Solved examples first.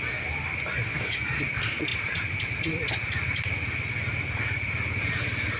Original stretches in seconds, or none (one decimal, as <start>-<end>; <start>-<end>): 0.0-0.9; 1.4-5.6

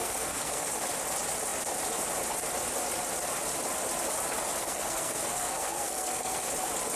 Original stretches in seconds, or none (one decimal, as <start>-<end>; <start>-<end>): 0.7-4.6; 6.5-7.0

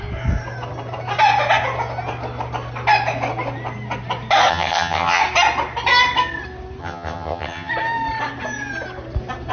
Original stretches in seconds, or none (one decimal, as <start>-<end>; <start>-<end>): 0.0-4.5; 5.2-6.8; 7.7-9.5

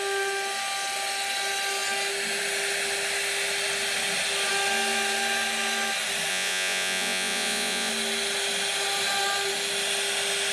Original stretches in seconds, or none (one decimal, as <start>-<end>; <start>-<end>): 0.0-6.3; 7.9-10.5